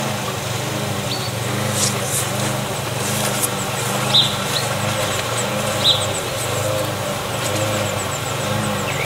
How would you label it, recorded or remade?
recorded